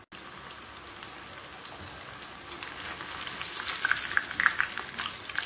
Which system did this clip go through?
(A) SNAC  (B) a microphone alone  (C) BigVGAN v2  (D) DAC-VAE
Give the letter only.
B